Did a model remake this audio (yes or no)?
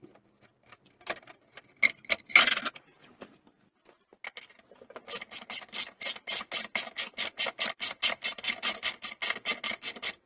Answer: no